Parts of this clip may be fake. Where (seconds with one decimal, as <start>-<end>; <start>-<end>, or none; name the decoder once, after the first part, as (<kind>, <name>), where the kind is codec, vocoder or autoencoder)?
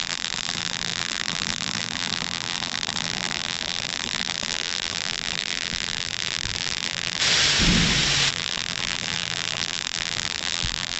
0.0-7.2 (vocoder, BigVGAN v2); 8.3-11.0